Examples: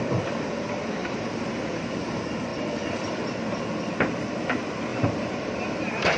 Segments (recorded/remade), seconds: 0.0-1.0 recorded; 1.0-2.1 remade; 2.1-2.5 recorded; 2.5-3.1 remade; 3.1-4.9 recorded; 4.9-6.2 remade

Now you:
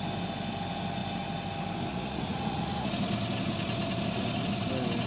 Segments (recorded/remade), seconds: 0.0-1.9 recorded; 1.9-2.9 remade; 2.9-5.1 recorded

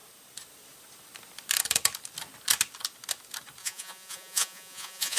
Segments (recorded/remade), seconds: 0.0-3.6 recorded; 3.6-5.2 remade